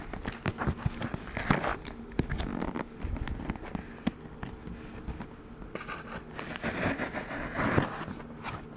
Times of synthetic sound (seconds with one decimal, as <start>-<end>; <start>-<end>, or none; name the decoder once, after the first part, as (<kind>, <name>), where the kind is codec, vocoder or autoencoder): 1.7-2.3 (vocoder, BigVGAN v2)